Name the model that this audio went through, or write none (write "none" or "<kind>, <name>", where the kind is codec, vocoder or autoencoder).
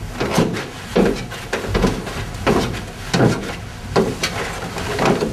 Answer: none